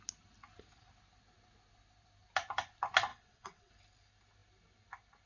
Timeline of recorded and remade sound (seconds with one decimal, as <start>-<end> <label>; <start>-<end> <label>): 0.0-3.1 recorded; 3.1-3.7 remade; 3.7-5.3 recorded